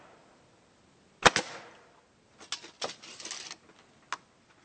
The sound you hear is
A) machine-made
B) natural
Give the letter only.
B